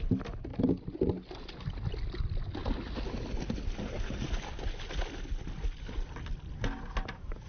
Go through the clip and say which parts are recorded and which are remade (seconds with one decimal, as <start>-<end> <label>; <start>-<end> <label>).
0.0-7.5 recorded